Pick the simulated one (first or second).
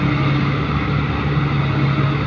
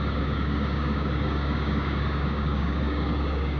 second